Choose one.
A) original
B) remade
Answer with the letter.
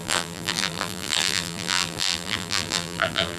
B